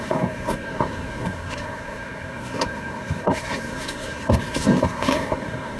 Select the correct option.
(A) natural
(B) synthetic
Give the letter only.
B